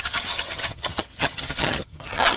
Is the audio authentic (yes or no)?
no